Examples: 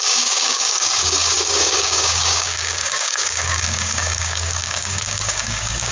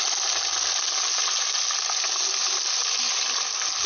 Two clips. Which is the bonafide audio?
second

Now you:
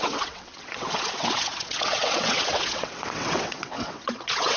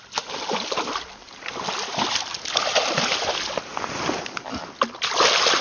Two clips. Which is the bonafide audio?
second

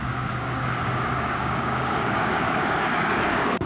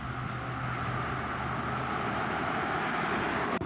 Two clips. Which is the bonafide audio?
second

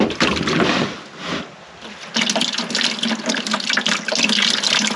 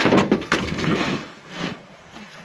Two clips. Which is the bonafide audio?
first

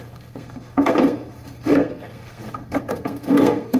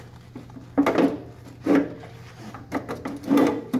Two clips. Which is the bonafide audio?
second